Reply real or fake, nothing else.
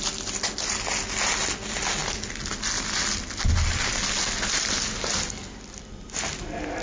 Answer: real